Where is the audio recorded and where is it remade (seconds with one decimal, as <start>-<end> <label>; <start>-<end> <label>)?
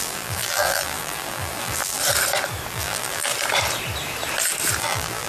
0.0-2.0 remade; 2.0-2.7 recorded; 2.7-3.3 remade; 3.3-4.8 recorded; 4.8-5.3 remade